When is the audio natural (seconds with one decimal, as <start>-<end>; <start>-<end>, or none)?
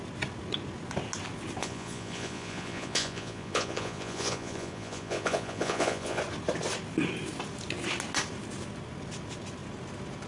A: 0.0-1.6; 6.2-10.3